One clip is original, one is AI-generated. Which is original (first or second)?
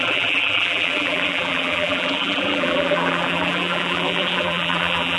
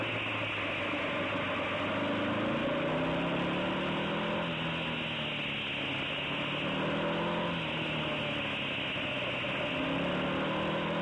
second